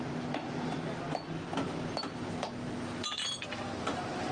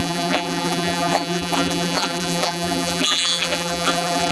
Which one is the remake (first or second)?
second